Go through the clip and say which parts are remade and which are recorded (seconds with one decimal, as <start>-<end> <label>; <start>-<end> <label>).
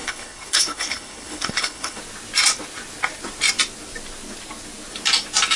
0.0-2.0 remade; 2.0-5.6 recorded